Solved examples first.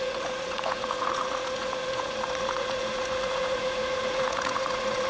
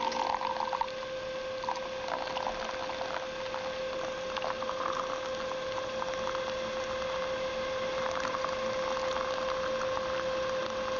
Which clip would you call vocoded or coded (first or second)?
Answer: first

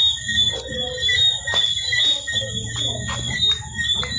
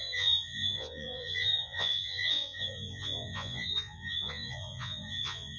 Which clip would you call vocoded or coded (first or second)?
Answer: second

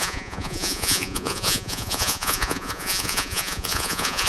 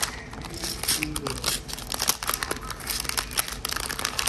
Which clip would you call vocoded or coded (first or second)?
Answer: first